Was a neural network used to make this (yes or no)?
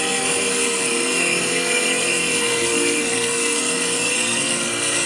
yes